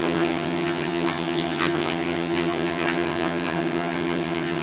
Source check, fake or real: fake